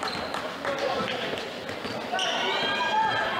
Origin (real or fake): real